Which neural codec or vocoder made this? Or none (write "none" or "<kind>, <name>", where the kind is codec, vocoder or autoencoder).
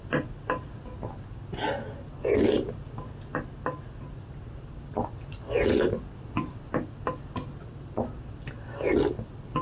none